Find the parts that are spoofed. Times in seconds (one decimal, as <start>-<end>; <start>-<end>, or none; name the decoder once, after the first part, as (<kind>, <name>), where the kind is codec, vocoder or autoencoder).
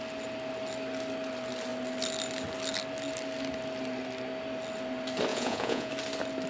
5.3-5.9 (vocoder, Vocos)